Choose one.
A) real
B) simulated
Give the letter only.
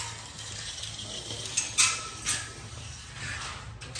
A